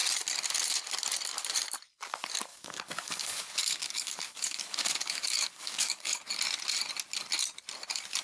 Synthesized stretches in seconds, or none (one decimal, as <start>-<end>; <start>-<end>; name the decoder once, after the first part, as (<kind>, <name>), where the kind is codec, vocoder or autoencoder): 2.5-6.2 (codec, DAC)